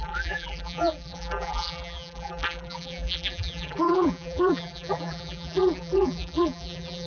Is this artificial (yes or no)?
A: yes